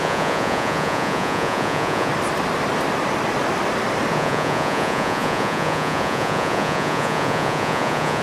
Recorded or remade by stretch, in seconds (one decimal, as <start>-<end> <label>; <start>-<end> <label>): 0.0-2.1 remade; 2.1-4.1 recorded; 4.1-8.2 remade